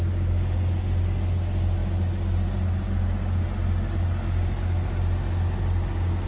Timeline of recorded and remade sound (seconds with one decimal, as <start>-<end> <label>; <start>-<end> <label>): 0.0-6.3 recorded